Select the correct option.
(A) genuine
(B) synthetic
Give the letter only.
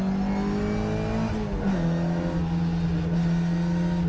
A